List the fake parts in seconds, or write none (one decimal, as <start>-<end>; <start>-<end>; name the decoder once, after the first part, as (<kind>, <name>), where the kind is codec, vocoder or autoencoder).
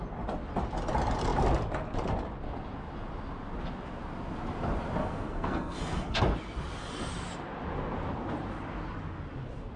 5.0-6.2 (codec, SNAC)